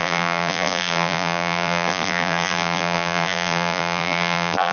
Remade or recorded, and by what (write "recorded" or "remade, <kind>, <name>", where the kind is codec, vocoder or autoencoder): remade, vocoder, BigVGAN v2